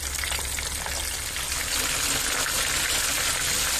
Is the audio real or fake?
real